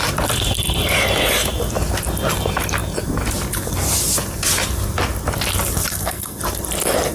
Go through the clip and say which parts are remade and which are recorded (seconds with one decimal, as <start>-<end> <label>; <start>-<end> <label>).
0.0-5.9 recorded; 5.9-6.4 remade; 6.4-7.1 recorded